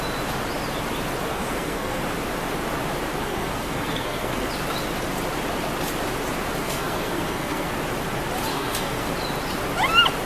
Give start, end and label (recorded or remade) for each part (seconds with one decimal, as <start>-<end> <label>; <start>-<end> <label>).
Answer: 0.0-1.3 recorded; 1.3-2.0 remade; 2.0-3.1 recorded; 3.1-4.5 remade; 4.5-6.6 recorded; 6.6-7.7 remade; 7.7-8.5 recorded; 8.5-9.1 remade; 9.1-10.3 recorded